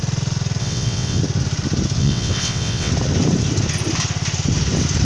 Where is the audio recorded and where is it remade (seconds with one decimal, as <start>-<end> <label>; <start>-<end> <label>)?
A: 0.0-0.6 recorded; 0.6-1.2 remade; 1.2-2.0 recorded; 2.0-2.9 remade; 2.9-5.0 recorded